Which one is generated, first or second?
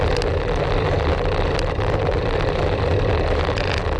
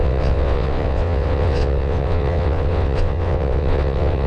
second